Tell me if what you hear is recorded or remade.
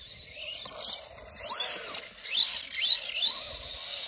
recorded